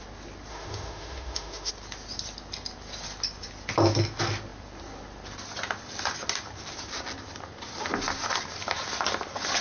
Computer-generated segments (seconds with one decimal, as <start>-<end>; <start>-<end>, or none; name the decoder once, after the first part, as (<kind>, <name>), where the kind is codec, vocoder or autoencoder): 0.5-1.7 (autoencoder, DAC-VAE)